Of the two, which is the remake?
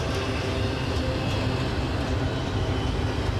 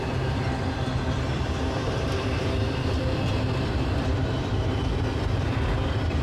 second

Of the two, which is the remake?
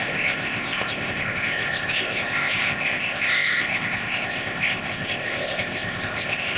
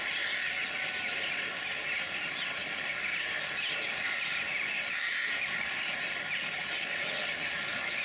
first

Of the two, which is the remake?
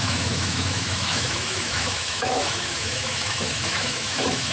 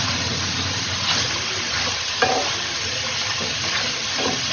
first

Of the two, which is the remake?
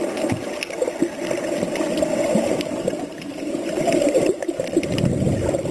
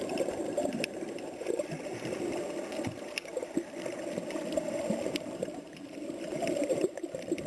second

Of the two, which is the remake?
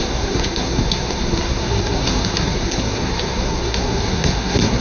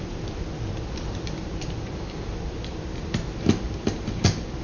first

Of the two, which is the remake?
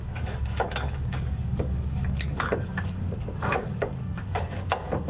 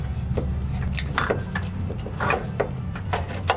first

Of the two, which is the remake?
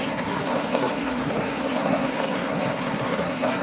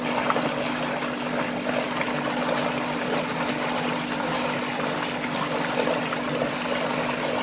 first